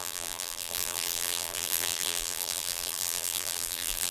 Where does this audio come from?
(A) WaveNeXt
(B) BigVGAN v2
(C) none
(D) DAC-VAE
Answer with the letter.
B